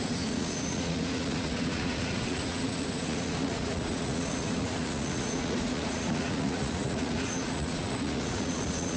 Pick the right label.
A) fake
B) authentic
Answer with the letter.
A